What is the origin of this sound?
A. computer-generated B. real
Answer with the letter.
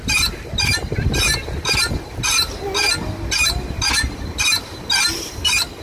B